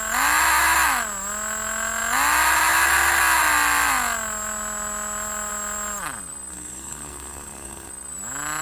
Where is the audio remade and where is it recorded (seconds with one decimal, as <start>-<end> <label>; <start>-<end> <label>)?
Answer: 0.0-6.5 recorded; 6.5-7.9 remade; 7.9-8.6 recorded